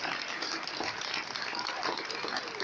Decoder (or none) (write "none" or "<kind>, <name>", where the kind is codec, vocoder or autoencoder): none